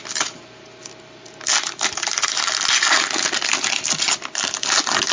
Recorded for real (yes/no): yes